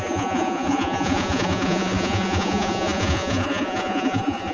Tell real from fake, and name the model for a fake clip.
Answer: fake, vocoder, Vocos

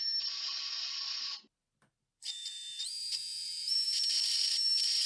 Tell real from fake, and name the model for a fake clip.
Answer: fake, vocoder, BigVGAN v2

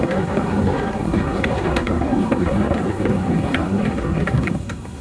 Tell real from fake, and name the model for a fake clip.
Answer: fake, codec, SNAC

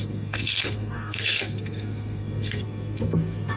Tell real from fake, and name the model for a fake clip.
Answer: fake, codec, SNAC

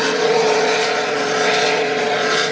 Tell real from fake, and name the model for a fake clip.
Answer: fake, vocoder, Vocos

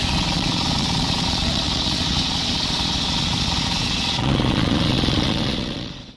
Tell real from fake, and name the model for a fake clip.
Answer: fake, vocoder, Vocos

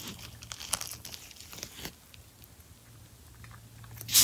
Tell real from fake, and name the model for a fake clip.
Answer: real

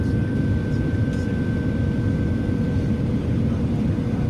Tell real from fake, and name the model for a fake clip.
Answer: real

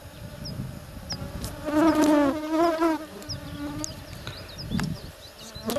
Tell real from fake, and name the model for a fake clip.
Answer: real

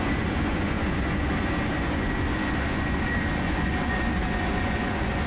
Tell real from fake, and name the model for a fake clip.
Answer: fake, vocoder, Vocos